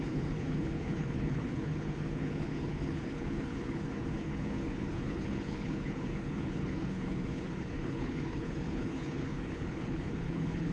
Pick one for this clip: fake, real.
fake